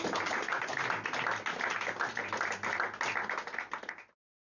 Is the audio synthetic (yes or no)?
no